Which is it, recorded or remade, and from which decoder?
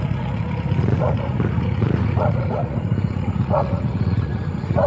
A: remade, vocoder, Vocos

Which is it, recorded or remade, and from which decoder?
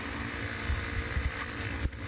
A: recorded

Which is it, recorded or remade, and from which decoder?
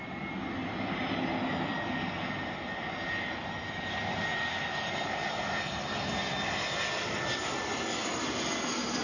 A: recorded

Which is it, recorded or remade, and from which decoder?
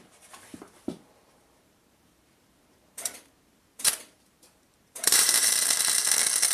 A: remade, vocoder, BigVGAN v2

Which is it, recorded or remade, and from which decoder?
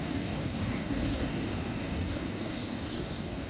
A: remade, codec, DAC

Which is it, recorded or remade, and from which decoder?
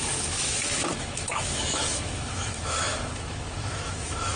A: remade, autoencoder, DAC-VAE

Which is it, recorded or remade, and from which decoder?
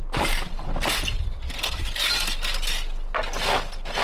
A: recorded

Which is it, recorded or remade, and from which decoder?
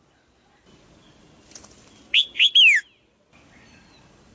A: recorded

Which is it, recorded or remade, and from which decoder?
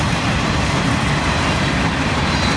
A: recorded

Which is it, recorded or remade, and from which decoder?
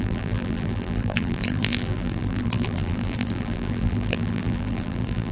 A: remade, vocoder, BigVGAN v2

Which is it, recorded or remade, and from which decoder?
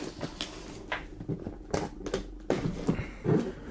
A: recorded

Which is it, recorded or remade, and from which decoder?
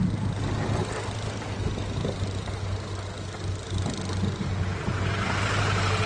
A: recorded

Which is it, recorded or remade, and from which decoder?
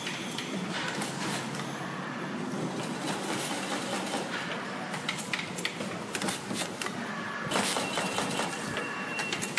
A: remade, vocoder, BigVGAN v2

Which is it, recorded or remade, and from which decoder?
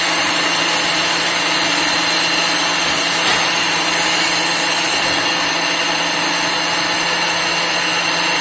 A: recorded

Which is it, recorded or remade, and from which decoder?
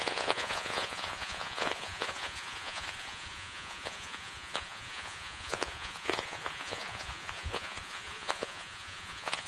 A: remade, vocoder, Vocos